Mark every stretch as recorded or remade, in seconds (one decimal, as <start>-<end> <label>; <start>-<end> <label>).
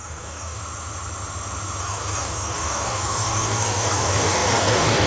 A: 0.0-0.6 remade; 0.6-1.8 recorded; 1.8-5.1 remade